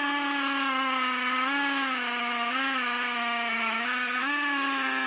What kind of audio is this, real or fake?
fake